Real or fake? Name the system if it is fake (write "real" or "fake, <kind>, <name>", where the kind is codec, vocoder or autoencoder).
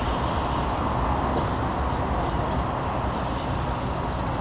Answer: real